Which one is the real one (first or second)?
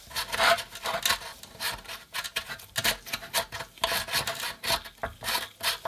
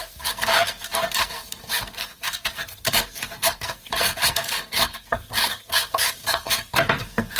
first